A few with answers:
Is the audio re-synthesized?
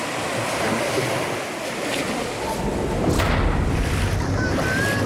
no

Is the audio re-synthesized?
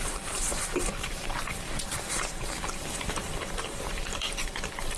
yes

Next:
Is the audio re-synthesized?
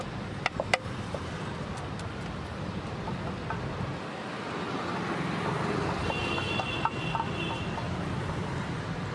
no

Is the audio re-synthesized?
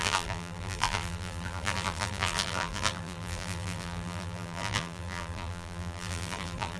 yes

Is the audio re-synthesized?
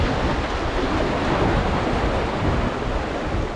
no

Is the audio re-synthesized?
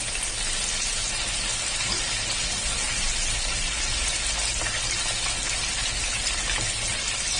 no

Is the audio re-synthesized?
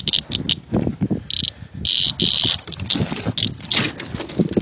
no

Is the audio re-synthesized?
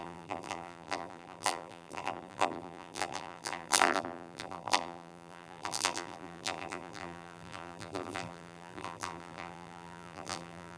yes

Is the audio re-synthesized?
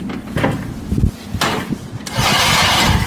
yes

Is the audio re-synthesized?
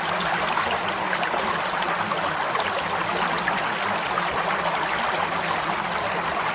no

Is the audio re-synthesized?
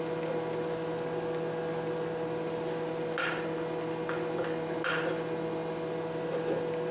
no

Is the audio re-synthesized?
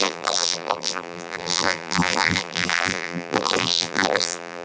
yes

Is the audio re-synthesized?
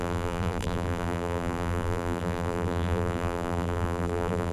yes